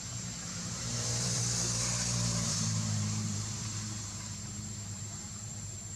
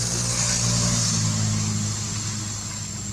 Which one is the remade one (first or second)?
first